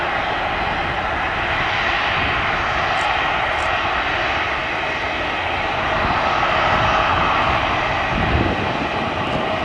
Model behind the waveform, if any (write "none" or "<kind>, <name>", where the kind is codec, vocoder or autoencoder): none